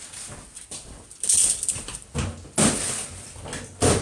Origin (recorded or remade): recorded